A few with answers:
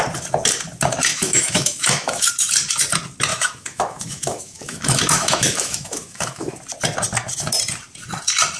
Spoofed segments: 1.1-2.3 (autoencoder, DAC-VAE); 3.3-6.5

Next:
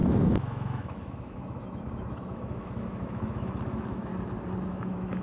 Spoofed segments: 0.0-4.1 (autoencoder, DAC-VAE); 4.6-5.2

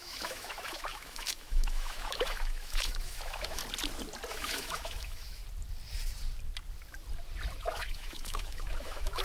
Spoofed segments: 0.0-3.6 (autoencoder, DAC-VAE); 4.3-5.4; 7.6-9.2

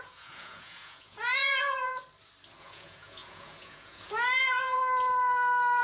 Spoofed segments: 0.0-1.9 (vocoder, Vocos); 2.6-4.8